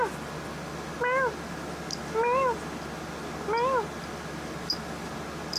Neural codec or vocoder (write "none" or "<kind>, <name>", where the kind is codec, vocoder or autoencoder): none